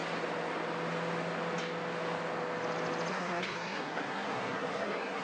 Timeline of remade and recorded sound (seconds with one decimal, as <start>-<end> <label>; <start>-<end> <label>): 0.0-3.1 recorded; 3.1-5.2 remade